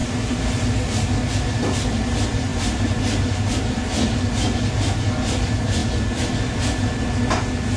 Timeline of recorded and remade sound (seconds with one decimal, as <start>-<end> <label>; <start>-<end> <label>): 0.0-2.5 recorded; 2.5-3.6 remade; 3.6-7.8 recorded